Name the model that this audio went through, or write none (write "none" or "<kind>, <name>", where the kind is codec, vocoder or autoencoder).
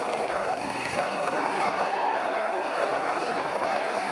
codec, SNAC